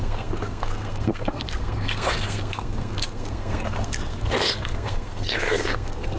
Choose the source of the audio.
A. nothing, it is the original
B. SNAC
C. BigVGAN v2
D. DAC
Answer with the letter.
B